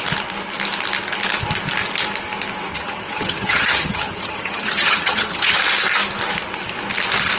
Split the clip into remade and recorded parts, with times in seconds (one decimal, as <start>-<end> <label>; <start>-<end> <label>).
0.0-2.7 recorded; 2.7-5.6 remade; 5.6-7.4 recorded